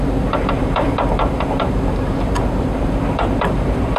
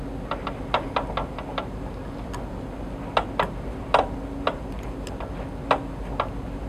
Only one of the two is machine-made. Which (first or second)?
first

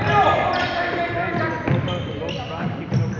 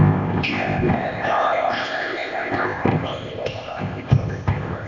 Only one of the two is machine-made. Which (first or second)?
second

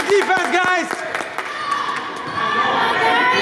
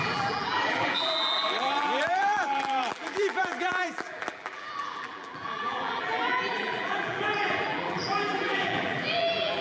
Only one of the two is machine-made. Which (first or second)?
second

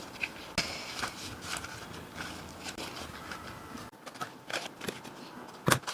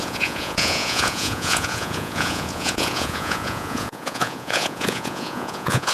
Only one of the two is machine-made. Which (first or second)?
second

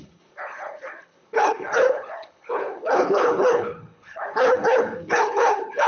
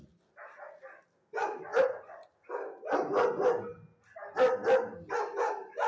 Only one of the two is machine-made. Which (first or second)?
first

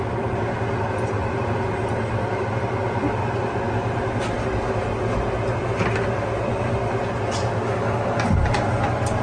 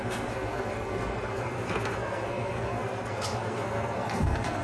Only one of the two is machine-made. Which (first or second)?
second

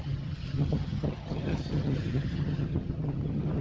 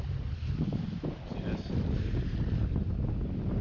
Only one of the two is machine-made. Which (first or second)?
first